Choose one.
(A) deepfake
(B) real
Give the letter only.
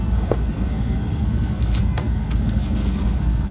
A